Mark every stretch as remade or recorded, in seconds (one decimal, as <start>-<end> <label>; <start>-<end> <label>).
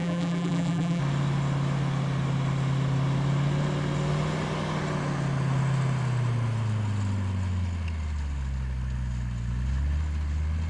0.0-1.0 remade; 1.0-10.7 recorded